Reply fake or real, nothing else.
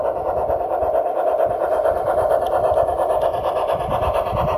real